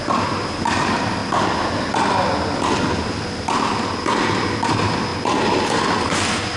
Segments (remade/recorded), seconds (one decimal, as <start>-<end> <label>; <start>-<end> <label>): 0.0-6.6 recorded